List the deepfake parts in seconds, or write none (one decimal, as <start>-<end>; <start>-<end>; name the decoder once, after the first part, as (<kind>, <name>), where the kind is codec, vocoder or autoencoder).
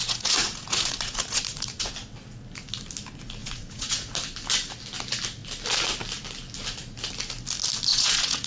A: 0.0-1.9 (vocoder, Vocos); 3.4-4.1; 7.9-8.5